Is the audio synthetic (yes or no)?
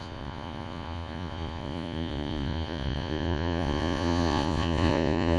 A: yes